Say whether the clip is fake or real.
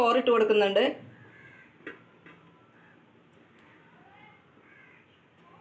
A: real